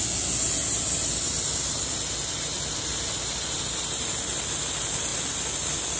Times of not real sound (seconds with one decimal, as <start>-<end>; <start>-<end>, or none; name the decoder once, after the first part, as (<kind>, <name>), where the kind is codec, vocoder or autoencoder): 5.1-6.0 (vocoder, BigVGAN v2)